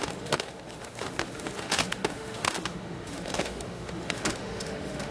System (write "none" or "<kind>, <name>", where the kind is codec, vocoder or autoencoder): autoencoder, DAC-VAE